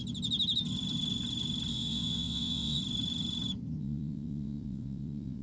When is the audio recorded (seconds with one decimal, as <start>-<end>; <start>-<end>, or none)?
0.0-1.7; 2.8-3.8